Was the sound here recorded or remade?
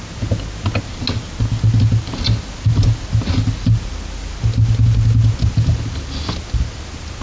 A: recorded